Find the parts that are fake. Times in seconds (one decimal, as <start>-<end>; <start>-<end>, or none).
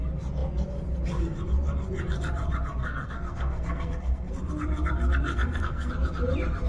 2.8-4.3; 5.3-5.9